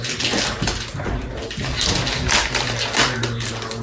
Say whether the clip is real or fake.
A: real